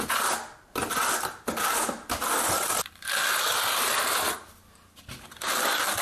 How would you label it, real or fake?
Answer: real